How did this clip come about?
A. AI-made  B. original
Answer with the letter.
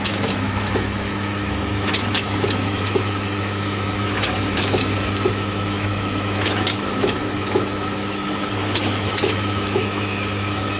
A